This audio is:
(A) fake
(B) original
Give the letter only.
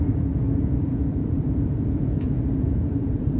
A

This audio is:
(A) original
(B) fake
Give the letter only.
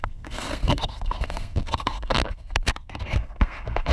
B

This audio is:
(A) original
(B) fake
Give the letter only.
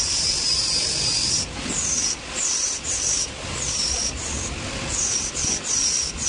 A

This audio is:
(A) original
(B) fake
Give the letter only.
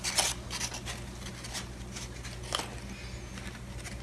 A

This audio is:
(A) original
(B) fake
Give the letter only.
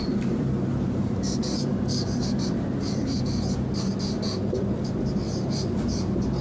B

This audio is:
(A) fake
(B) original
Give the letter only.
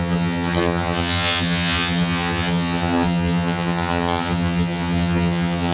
A